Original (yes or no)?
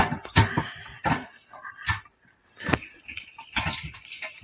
yes